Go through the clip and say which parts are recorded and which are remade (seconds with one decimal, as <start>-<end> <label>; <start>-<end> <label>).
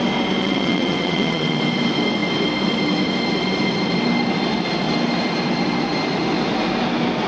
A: 0.0-0.4 recorded; 0.4-1.6 remade; 1.6-7.3 recorded